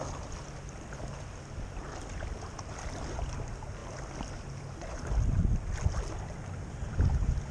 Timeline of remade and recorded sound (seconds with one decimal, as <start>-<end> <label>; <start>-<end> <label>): 0.0-7.5 recorded